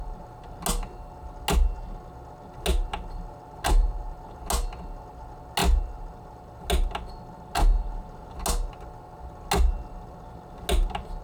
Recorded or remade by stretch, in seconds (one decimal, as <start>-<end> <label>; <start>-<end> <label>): 0.0-11.2 recorded